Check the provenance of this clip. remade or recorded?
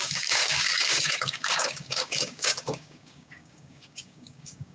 remade